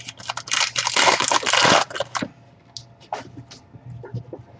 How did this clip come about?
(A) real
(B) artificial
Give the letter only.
A